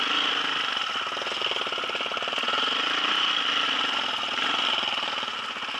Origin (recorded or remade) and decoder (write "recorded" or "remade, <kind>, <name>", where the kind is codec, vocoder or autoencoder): recorded